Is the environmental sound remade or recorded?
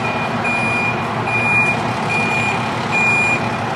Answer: recorded